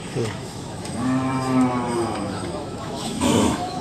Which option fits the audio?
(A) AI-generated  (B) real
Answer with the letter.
A